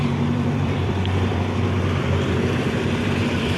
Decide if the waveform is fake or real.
fake